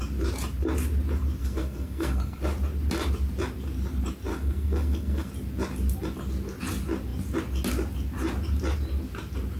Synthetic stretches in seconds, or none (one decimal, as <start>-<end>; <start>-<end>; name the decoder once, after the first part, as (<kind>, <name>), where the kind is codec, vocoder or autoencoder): 1.4-2.4 (codec, SNAC); 4.3-5.3